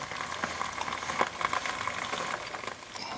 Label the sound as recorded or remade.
recorded